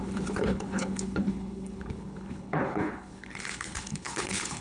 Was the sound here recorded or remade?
remade